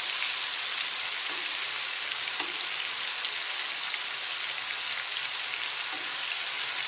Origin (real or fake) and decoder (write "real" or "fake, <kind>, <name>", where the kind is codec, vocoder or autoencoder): real